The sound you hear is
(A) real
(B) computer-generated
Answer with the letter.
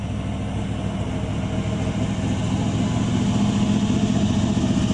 A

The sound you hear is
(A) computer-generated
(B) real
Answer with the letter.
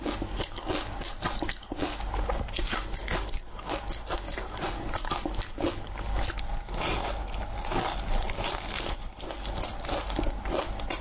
B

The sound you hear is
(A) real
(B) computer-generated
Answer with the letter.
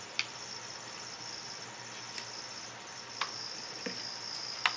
A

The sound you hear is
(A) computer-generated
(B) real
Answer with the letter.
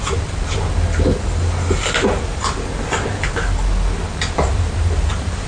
B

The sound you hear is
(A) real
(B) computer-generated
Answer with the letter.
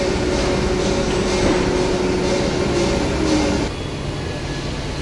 A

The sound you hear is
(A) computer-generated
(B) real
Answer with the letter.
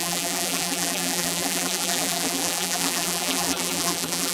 A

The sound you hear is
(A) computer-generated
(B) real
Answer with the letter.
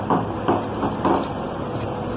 B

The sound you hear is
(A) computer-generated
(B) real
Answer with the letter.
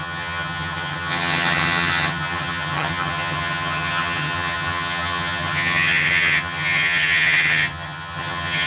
A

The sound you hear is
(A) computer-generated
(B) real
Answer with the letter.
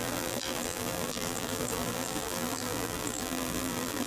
A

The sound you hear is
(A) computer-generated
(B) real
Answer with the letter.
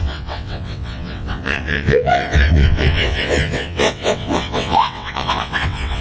A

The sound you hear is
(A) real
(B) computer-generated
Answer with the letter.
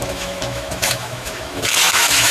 B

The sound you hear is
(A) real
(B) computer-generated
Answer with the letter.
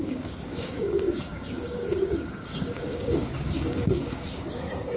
B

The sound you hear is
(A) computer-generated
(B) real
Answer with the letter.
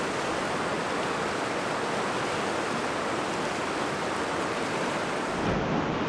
B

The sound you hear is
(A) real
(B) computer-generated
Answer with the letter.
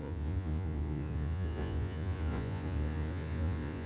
B